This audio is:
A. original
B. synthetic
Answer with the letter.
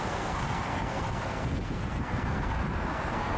B